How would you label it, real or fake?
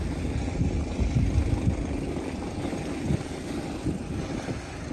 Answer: real